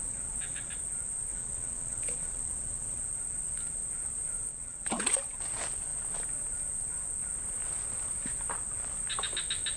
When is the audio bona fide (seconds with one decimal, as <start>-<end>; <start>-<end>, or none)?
0.7-1.3; 3.0-4.5; 5.4-9.8